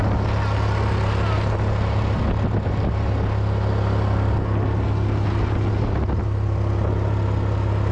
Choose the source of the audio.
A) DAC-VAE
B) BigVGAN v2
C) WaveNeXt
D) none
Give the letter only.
D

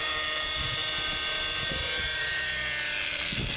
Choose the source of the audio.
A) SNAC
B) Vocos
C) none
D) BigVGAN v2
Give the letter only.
C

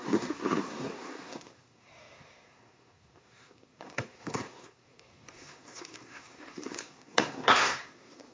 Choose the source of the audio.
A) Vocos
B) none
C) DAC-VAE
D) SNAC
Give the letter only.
D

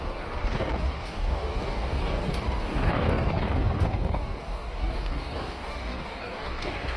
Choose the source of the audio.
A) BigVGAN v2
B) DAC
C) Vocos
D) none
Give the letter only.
B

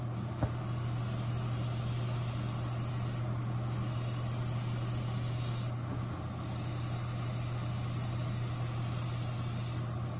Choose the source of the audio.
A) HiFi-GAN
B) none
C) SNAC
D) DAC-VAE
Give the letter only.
B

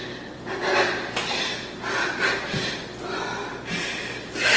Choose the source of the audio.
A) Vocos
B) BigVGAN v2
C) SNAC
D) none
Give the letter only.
D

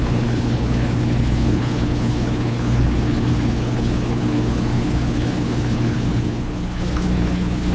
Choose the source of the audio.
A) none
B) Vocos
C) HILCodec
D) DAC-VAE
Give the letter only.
C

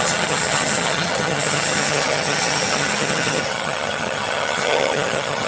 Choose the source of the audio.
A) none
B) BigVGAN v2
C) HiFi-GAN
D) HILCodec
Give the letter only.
C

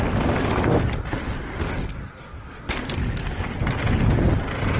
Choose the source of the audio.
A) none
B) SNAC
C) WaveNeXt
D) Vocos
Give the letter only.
A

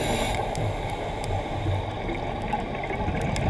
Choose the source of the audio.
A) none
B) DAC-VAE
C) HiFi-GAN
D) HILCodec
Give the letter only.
A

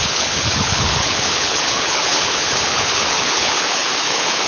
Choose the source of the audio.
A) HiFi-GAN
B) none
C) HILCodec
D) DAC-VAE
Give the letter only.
C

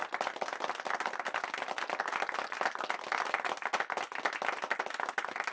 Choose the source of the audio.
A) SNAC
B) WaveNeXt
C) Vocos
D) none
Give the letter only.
D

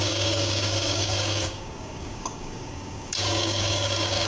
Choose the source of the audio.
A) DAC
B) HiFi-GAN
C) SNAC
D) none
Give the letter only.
A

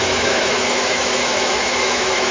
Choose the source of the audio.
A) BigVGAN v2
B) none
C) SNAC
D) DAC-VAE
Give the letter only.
D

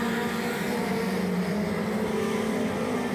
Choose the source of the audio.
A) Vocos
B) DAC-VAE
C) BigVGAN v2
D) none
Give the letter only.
D